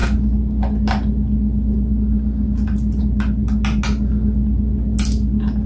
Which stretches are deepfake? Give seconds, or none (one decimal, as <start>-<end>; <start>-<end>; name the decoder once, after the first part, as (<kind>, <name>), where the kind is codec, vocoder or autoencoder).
none

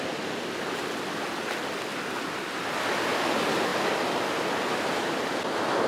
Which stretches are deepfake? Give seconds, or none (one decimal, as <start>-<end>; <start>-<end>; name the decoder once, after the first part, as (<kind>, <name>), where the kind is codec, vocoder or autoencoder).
none

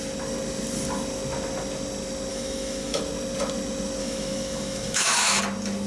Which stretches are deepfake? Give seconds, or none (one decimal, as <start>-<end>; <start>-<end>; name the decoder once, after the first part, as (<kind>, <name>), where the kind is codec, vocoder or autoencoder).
2.3-3.0 (autoencoder, DAC-VAE); 4.0-5.4